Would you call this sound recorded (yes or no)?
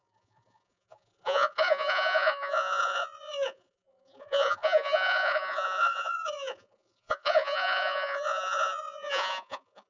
no